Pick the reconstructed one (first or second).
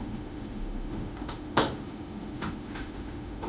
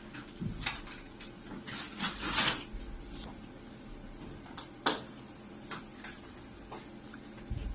first